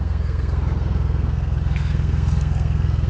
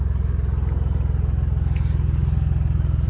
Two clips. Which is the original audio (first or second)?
second